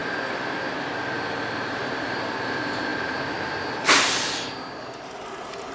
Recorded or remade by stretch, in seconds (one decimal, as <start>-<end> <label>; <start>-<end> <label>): 0.0-1.7 recorded; 1.7-5.7 remade